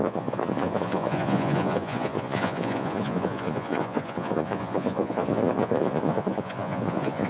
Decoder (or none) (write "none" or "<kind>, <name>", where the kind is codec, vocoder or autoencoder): vocoder, Vocos